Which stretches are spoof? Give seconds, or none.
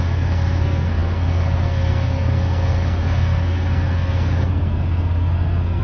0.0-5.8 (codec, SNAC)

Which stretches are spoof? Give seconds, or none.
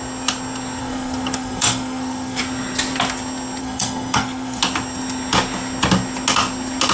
0.8-2.4 (codec, SNAC); 3.6-4.6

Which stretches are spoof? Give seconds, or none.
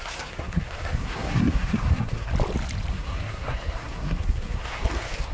0.0-2.3 (codec, SNAC); 2.9-5.3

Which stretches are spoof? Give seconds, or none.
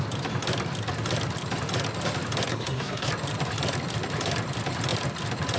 2.5-3.1 (codec, SNAC)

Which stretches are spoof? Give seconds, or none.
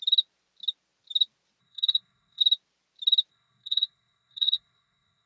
1.6-2.4 (codec, SNAC); 3.3-5.3